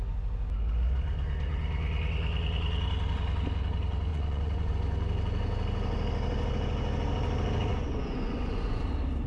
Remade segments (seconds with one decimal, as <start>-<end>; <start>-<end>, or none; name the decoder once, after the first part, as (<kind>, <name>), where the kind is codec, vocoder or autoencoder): 4.1-4.7 (vocoder, Vocos); 7.7-8.8

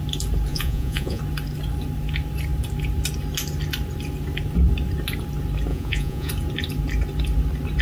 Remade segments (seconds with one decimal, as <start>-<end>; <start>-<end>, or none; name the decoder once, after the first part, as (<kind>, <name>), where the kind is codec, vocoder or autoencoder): 0.5-1.2 (vocoder, Vocos); 5.7-6.3

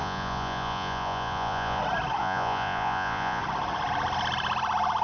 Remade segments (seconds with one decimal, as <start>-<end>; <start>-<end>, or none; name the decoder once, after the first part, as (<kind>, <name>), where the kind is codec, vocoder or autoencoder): 0.0-1.8 (vocoder, Vocos); 2.2-3.4

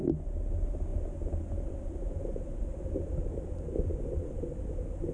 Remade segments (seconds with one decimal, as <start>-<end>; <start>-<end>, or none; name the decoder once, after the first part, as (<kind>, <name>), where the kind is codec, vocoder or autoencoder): none

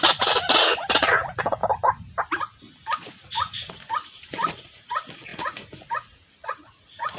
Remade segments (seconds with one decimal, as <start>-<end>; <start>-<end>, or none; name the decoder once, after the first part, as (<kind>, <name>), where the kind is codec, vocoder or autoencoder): 0.0-1.6 (vocoder, Vocos); 3.1-7.2

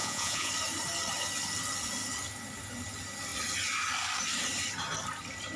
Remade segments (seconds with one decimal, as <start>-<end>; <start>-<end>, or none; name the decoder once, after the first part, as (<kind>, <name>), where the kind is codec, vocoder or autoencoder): 0.0-0.5 (vocoder, Vocos)

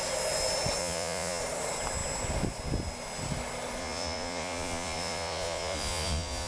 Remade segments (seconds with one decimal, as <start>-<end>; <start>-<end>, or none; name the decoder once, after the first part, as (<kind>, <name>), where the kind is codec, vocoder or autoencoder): 0.8-1.4 (vocoder, Vocos); 3.8-6.5